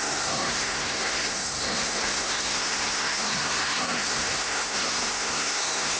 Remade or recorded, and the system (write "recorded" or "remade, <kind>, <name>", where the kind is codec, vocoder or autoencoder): remade, codec, SNAC